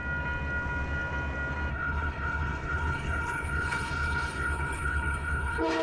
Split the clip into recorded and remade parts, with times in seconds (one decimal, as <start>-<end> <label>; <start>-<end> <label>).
0.0-1.7 recorded; 1.7-5.8 remade

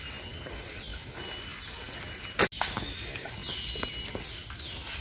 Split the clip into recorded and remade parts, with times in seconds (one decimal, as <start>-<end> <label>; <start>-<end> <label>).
0.0-5.0 recorded

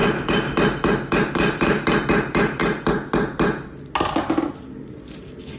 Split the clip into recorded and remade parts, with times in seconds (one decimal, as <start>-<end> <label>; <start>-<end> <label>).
0.0-5.6 recorded